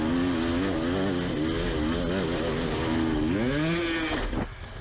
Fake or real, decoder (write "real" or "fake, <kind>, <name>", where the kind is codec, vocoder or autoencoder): real